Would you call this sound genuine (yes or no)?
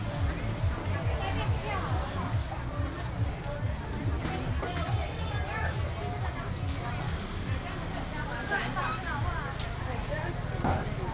yes